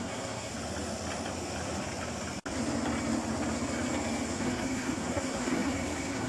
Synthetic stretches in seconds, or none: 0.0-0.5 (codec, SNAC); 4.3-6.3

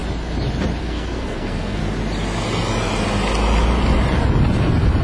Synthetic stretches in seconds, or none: 0.8-1.8 (codec, SNAC)

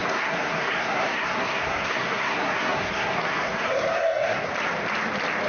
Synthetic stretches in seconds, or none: 0.0-4.5 (codec, SNAC)

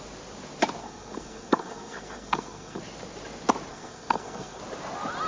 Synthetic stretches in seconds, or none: 0.8-2.8 (codec, SNAC); 3.7-4.6

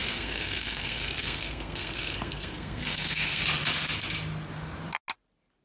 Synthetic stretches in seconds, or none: 0.0-3.4 (codec, SNAC)